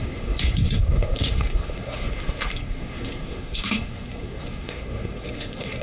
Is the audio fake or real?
fake